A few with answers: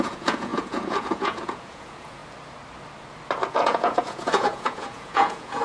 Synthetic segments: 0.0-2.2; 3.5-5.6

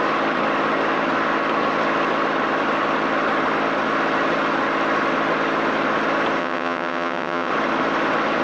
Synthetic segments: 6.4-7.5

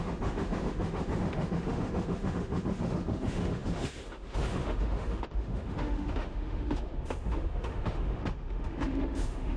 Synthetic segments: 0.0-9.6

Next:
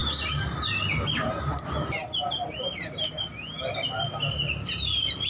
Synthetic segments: none

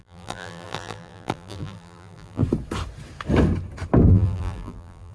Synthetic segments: 0.0-2.4; 4.1-5.1

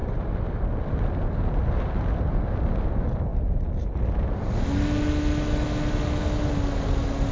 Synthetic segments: none

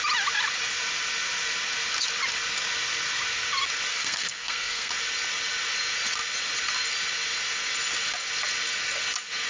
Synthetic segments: 3.9-4.9